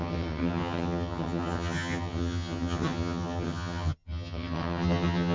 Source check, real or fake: fake